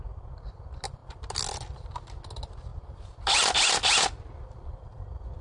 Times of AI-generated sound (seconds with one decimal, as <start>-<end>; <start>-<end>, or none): none